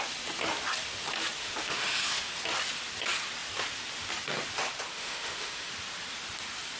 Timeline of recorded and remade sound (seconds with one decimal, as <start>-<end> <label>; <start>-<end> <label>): 0.0-1.4 recorded; 1.4-2.3 remade; 2.3-4.9 recorded; 4.9-5.7 remade; 5.7-6.8 recorded